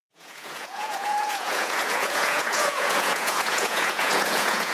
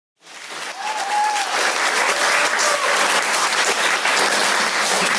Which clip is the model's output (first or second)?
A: first